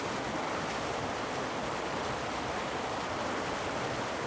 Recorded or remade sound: recorded